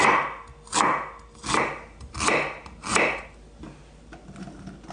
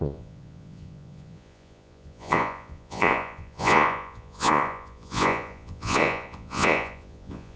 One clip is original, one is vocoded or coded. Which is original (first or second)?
first